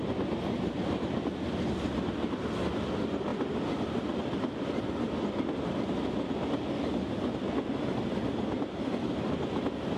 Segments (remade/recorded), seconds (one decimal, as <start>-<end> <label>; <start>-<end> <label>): 0.0-10.0 recorded